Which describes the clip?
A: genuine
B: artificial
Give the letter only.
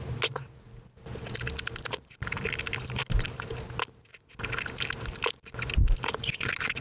A